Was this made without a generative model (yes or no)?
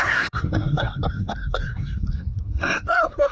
no